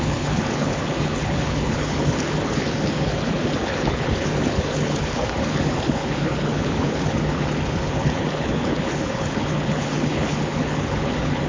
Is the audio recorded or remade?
remade